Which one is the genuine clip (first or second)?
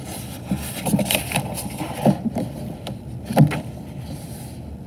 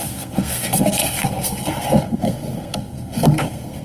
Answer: first